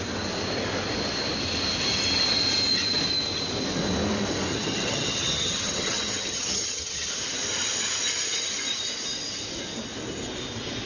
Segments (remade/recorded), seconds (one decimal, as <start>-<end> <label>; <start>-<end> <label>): 0.0-4.5 recorded; 4.5-7.1 remade; 7.1-10.9 recorded